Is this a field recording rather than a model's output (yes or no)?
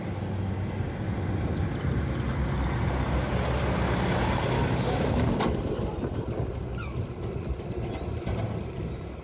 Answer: yes